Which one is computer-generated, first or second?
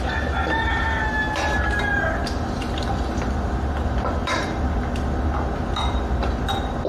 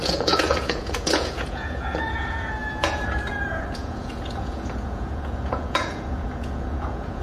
second